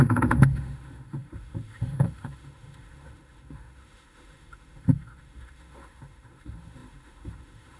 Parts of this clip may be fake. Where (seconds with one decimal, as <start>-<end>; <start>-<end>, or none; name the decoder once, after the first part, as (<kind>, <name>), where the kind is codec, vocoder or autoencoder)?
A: 0.0-7.8 (autoencoder, DAC-VAE)